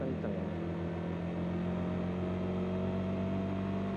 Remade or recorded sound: recorded